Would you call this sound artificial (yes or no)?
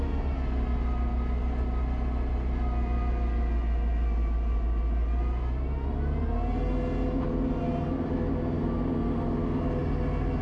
no